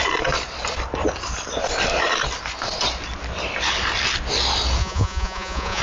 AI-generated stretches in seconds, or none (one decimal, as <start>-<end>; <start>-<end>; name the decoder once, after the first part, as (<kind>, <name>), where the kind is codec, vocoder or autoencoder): 4.8-5.8 (vocoder, Vocos)

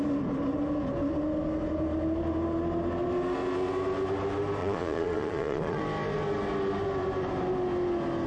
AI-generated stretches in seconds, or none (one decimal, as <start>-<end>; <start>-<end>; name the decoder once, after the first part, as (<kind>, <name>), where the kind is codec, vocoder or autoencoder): 4.6-5.8 (vocoder, Vocos)

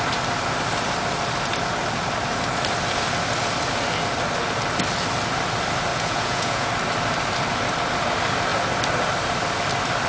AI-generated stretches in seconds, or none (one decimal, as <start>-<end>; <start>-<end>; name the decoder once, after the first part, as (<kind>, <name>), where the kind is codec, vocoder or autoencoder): 5.9-6.7 (vocoder, Vocos)